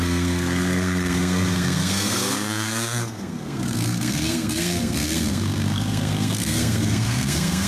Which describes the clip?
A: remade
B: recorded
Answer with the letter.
A